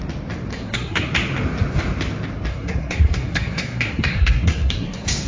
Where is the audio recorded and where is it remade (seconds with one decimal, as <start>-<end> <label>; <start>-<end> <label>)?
0.0-0.5 recorded; 0.5-1.1 remade; 1.1-2.5 recorded; 2.5-5.3 remade